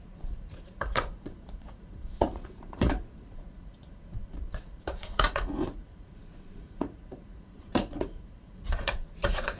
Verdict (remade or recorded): remade